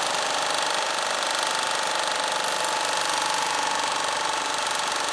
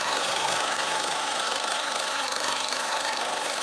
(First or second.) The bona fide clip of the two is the first